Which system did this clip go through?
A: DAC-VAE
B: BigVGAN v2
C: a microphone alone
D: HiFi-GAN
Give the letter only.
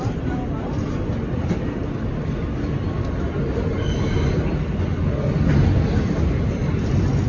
C